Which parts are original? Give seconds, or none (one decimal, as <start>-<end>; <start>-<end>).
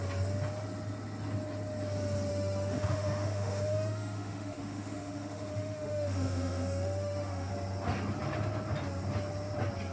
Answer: 0.0-2.3; 7.5-9.9